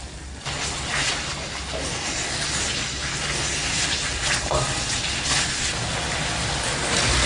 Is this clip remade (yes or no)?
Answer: no